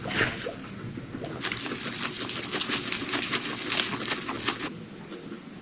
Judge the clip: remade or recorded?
recorded